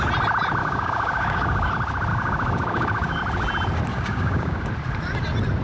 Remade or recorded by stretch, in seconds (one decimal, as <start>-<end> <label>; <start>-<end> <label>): 0.0-0.6 recorded; 0.6-1.7 remade; 1.7-2.1 recorded; 2.1-3.2 remade; 3.2-3.9 recorded; 3.9-4.7 remade; 4.7-5.6 recorded